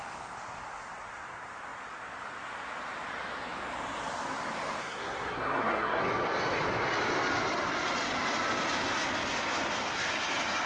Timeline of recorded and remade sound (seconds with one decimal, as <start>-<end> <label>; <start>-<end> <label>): 0.0-4.8 recorded; 4.8-6.0 remade; 6.0-10.7 recorded